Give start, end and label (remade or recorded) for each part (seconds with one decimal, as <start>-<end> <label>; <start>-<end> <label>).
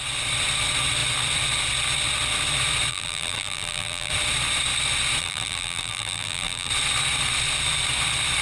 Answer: 0.0-2.9 recorded; 2.9-4.1 remade; 4.1-5.2 recorded; 5.2-6.7 remade; 6.7-8.4 recorded